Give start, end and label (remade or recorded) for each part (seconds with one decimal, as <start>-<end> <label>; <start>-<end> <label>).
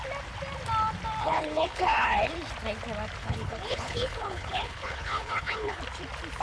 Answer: 0.0-1.2 recorded; 1.2-2.3 remade; 2.3-3.2 recorded; 3.2-5.8 remade; 5.8-6.4 recorded